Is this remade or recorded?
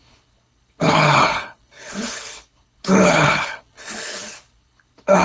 remade